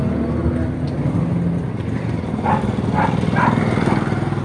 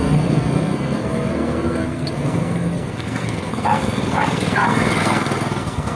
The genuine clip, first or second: first